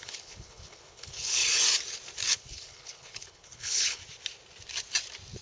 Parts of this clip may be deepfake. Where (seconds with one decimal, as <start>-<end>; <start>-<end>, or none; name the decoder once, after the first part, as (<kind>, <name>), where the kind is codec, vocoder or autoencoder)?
0.0-1.4 (codec, HILCodec); 2.4-4.0